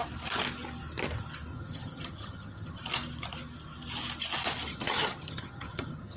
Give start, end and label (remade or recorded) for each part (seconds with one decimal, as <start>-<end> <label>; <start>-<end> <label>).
0.0-1.5 recorded; 1.5-2.8 remade; 2.8-4.7 recorded; 4.7-6.2 remade